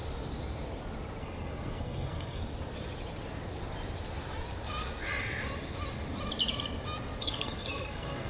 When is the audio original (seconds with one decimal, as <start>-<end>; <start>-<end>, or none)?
0.0-1.2; 2.4-7.2